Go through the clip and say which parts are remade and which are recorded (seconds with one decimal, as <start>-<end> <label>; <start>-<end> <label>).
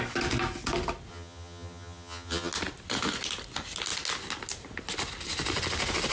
0.0-1.1 recorded; 1.1-2.5 remade; 2.5-6.1 recorded